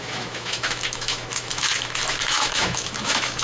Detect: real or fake fake